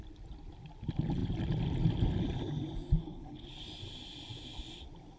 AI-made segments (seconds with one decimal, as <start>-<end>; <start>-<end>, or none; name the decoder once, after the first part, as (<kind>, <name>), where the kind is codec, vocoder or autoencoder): 3.0-3.5 (codec, HILCodec)